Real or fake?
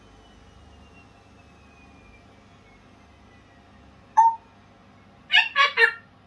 real